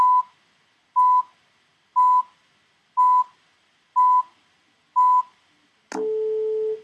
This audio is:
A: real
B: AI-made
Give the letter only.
A